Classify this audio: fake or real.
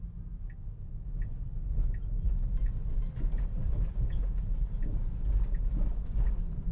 real